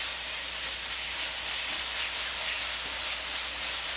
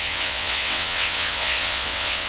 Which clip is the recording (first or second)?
first